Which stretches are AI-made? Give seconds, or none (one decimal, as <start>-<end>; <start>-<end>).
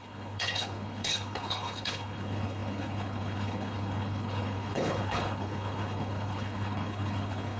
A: 0.0-7.6